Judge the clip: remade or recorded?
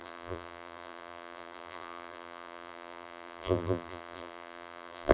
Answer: remade